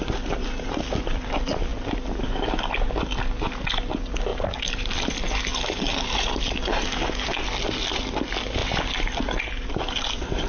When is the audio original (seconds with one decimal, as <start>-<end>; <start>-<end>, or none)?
0.0-10.5